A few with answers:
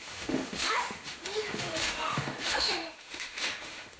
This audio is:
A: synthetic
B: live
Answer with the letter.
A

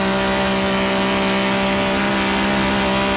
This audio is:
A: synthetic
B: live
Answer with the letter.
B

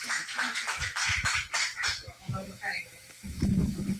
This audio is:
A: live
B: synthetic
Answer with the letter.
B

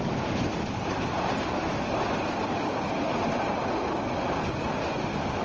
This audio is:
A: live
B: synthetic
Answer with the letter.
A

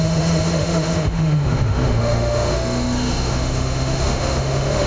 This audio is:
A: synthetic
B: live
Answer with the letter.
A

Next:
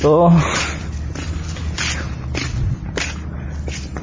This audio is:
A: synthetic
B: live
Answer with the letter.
B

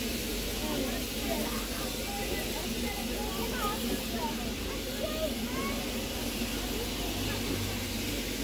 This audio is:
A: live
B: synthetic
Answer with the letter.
A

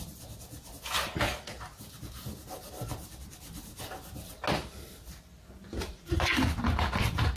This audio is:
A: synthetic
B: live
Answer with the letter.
B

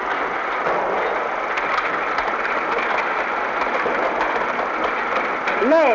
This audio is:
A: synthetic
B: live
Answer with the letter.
B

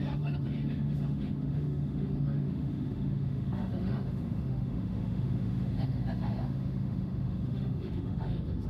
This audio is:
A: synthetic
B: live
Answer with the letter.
A